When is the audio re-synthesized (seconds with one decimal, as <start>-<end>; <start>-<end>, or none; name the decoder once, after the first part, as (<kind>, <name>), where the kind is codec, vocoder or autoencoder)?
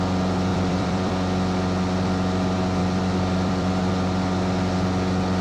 0.5-1.1 (vocoder, BigVGAN v2); 2.8-3.9